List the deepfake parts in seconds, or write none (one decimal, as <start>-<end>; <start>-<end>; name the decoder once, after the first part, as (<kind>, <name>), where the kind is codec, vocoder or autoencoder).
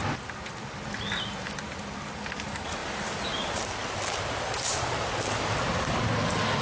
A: none